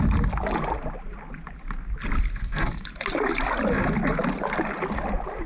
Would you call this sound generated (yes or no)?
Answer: no